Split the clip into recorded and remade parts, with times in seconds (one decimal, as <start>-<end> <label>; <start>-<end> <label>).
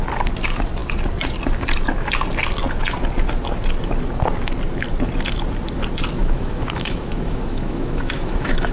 0.0-6.2 recorded; 6.2-8.7 remade